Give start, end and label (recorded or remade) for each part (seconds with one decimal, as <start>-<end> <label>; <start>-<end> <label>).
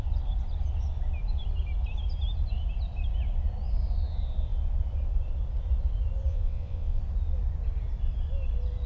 0.0-6.3 recorded; 6.3-7.0 remade; 7.0-8.9 recorded